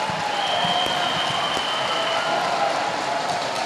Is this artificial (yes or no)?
no